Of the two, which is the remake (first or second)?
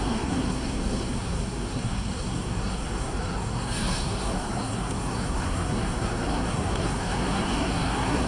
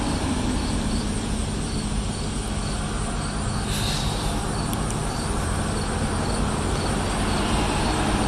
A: first